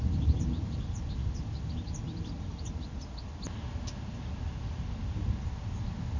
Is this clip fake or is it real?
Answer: real